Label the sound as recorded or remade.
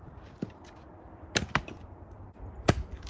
recorded